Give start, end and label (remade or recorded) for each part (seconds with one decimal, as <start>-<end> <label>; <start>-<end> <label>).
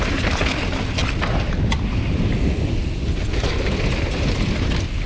0.0-5.1 recorded